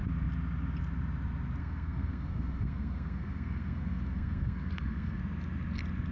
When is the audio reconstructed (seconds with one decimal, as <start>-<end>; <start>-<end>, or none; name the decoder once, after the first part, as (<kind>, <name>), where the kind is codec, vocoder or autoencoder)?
1.6-5.2 (codec, SNAC)